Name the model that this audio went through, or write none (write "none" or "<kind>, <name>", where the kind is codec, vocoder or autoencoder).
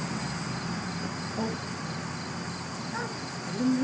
none